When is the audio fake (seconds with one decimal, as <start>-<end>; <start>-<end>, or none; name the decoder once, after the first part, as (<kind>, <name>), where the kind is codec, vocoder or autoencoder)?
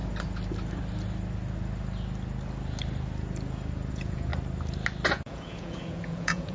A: 3.9-4.3 (vocoder, Vocos); 5.1-6.5